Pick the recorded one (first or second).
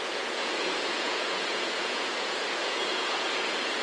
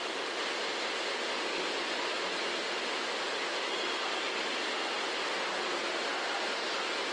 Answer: second